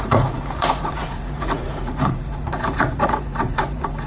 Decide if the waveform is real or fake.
fake